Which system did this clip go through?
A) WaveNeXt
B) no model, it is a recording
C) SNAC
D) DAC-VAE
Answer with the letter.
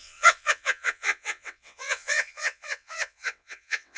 A